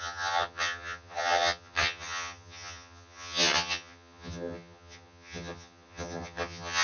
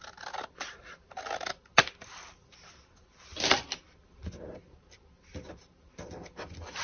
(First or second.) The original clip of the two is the second